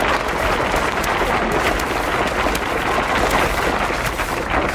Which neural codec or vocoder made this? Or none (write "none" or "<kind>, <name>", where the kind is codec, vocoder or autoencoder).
none